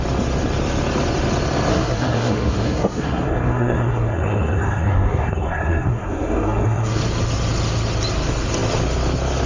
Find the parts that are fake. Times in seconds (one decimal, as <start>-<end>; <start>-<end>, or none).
1.7-7.0